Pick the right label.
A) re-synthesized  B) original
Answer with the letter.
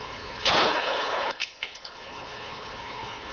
A